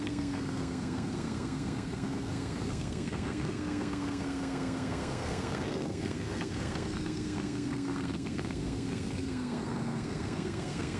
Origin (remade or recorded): remade